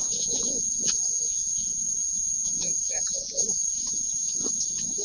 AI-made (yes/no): yes